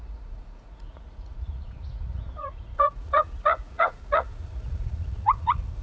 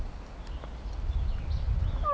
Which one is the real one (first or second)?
second